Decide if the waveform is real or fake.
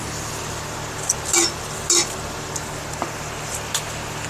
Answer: real